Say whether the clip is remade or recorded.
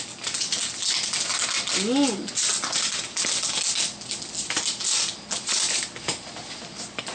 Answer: recorded